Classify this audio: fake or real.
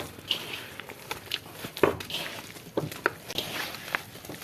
real